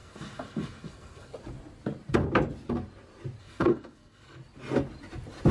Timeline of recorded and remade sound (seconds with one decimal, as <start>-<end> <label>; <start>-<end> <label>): 0.0-1.3 remade; 1.3-3.4 recorded; 3.4-4.4 remade; 4.4-5.5 recorded